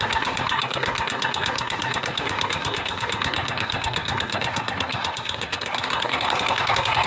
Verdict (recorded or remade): remade